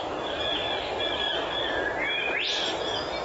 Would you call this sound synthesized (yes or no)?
no